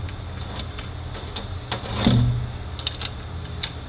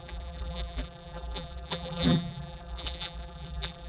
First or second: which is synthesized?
second